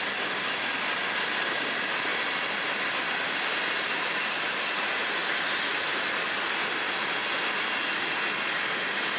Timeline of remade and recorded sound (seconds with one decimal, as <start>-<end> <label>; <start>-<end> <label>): 0.0-9.2 recorded